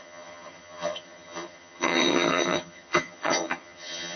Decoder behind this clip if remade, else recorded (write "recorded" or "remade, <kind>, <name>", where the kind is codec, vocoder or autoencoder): remade, vocoder, HiFi-GAN